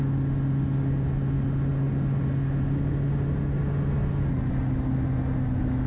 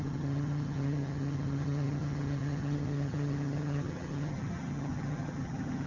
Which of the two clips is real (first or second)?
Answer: first